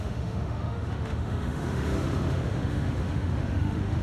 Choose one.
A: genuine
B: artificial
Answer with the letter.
B